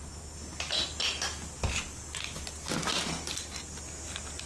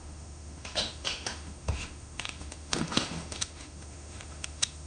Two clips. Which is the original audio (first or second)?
first